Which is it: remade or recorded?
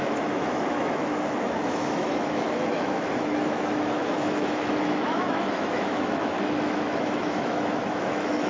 remade